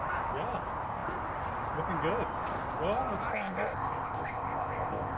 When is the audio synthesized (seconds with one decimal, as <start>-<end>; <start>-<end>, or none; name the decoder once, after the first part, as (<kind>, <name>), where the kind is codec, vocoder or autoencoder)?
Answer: 3.3-5.2 (codec, ZipCodec)